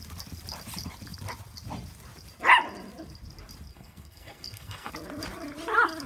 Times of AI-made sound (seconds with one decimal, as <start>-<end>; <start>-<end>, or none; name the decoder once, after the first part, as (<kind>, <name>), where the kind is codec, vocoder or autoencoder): 3.7-4.9 (codec, SNAC)